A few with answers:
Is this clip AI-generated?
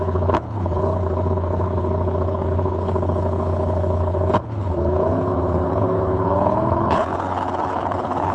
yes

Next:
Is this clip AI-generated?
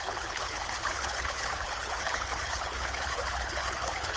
yes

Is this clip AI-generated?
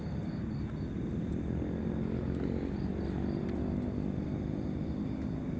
no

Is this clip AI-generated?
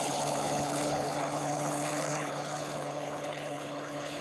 yes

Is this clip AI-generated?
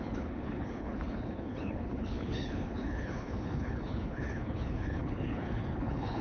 yes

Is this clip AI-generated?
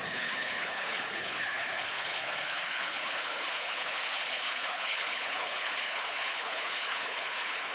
yes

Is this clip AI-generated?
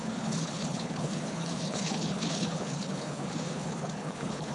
yes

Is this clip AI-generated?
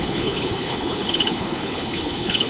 yes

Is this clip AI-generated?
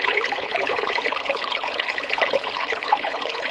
yes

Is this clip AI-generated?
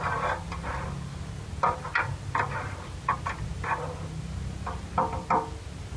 no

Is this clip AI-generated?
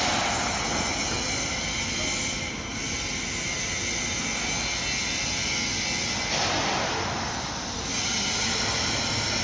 no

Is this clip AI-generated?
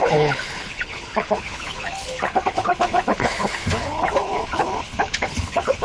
yes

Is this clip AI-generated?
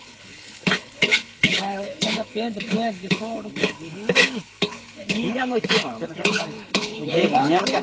yes